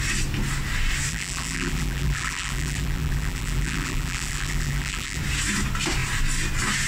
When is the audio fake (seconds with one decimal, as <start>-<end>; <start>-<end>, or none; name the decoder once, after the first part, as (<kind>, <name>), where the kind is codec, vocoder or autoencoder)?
1.1-5.2 (vocoder, BigVGAN v2)